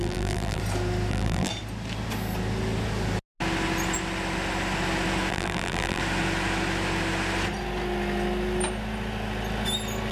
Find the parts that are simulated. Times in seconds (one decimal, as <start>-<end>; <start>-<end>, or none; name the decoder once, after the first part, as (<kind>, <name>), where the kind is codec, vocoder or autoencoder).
0.0-0.6 (vocoder, BigVGAN v2); 1.1-1.5; 5.3-6.0